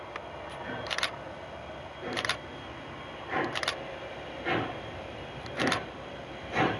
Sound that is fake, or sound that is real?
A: real